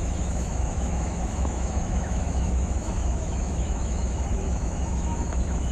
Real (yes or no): no